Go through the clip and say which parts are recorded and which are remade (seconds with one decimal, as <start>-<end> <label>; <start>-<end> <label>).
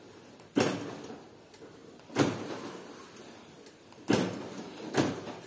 0.0-5.5 recorded